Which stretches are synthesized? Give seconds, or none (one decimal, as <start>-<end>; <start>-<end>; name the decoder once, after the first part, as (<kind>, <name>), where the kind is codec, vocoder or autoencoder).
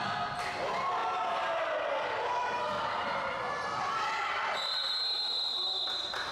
2.4-5.0 (vocoder, BigVGAN v2)